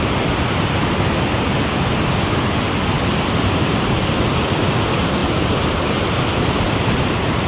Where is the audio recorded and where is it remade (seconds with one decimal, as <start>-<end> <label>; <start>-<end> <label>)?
0.0-7.5 recorded